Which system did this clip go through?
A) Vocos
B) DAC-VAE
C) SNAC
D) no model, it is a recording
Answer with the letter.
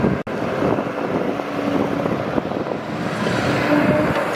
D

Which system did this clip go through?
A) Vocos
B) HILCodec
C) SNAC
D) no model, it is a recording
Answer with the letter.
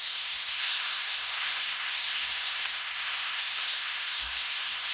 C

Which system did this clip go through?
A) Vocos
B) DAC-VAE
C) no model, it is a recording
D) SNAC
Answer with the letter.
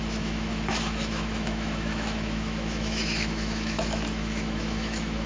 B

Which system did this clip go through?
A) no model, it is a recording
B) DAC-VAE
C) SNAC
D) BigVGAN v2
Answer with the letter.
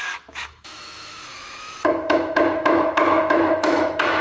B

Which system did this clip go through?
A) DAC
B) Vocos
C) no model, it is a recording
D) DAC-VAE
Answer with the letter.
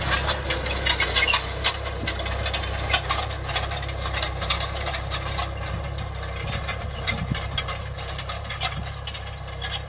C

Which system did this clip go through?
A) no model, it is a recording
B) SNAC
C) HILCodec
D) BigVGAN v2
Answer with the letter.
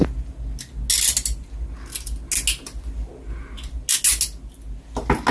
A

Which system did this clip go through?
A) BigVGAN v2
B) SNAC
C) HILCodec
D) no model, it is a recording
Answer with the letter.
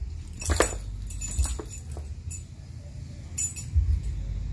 D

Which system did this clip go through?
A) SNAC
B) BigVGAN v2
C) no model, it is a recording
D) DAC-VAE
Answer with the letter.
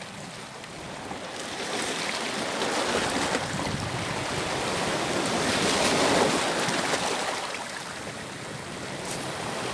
C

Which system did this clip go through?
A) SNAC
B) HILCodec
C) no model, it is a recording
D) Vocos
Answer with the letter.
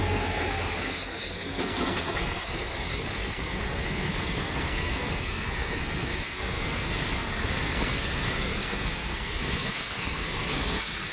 A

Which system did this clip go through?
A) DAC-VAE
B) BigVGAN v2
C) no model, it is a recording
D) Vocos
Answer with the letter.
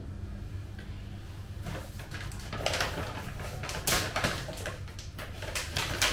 C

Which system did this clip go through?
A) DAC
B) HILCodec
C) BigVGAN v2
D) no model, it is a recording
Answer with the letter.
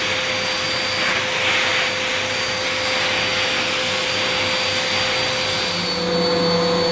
D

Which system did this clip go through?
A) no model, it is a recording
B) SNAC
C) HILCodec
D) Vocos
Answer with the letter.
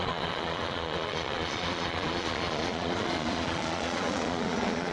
D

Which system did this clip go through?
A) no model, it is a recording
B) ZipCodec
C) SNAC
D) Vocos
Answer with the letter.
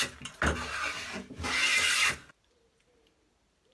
A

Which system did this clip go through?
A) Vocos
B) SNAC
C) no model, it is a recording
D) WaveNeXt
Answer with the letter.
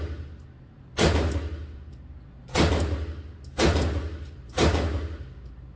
C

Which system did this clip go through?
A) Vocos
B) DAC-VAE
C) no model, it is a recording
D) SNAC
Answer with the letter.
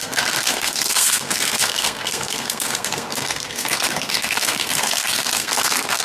D